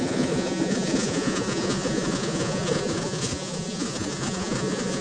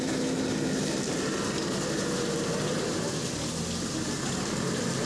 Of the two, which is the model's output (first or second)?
first